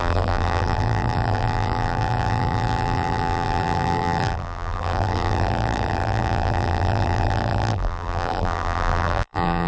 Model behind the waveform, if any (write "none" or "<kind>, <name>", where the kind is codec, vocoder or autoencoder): vocoder, BigVGAN v2